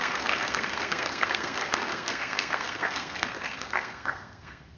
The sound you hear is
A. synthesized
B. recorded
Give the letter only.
A